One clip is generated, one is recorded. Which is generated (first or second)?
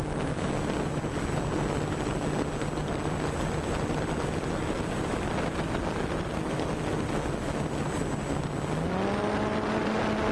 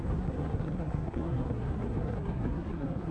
second